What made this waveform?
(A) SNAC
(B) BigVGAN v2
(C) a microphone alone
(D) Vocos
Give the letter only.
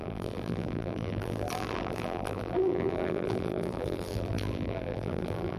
B